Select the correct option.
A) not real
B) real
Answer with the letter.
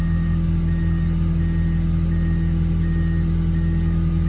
B